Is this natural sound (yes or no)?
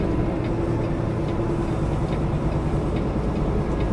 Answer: yes